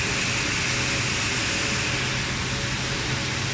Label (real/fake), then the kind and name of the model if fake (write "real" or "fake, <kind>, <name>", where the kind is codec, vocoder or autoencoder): real